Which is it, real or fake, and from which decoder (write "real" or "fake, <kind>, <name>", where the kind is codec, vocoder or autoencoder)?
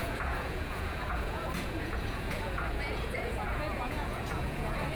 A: fake, vocoder, Vocos